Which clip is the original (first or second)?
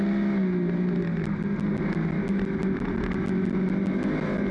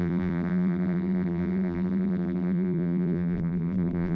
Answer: first